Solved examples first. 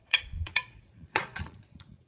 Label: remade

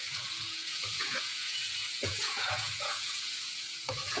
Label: remade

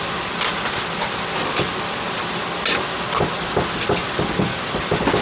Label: recorded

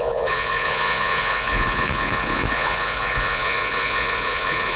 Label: remade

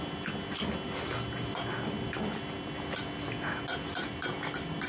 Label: recorded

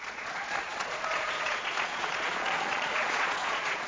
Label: remade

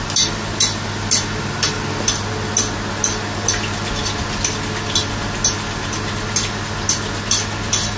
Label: recorded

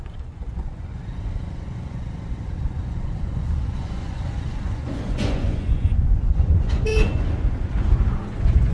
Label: remade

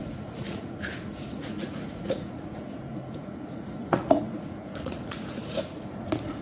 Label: remade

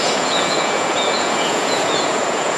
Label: remade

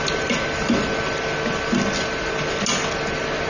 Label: recorded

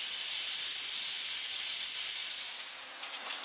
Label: recorded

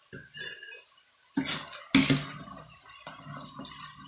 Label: recorded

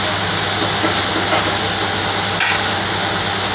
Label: recorded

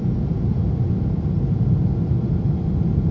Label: recorded